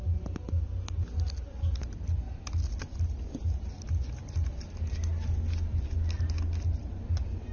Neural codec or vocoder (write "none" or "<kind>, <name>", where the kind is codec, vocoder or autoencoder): none